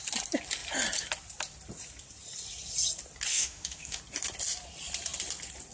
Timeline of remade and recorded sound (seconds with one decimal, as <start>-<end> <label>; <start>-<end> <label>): 0.0-3.3 recorded; 3.3-4.0 remade; 4.0-5.7 recorded